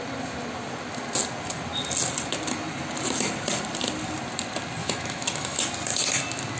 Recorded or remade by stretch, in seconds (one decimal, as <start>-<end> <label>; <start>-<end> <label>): 0.0-4.8 recorded; 4.8-5.6 remade; 5.6-6.6 recorded